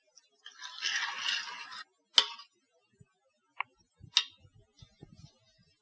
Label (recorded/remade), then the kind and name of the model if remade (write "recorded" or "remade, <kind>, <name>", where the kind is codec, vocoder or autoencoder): recorded